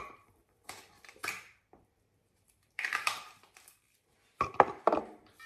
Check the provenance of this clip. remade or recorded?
remade